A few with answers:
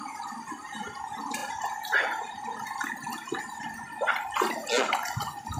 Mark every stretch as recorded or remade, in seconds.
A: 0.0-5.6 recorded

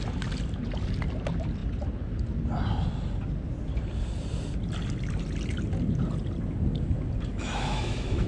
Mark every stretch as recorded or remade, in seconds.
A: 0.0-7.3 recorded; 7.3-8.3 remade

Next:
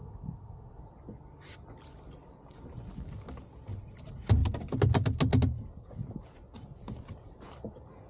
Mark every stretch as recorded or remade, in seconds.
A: 0.0-0.8 remade; 0.8-8.1 recorded

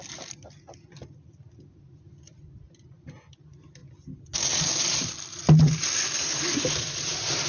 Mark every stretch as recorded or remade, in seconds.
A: 0.0-7.5 recorded

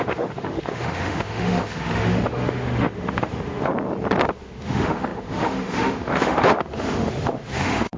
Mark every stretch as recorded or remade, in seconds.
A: 0.0-3.7 remade; 3.7-4.3 recorded; 4.3-8.0 remade

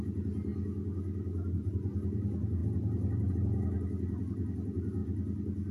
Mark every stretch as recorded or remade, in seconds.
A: 0.0-5.7 recorded

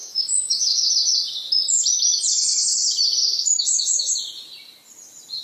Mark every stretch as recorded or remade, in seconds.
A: 0.0-0.9 remade; 0.9-3.2 recorded; 3.2-4.1 remade; 4.1-5.4 recorded